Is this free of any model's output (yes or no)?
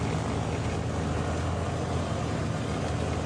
yes